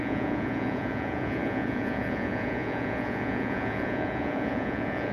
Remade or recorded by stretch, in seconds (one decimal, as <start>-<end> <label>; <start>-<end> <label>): 0.0-5.1 remade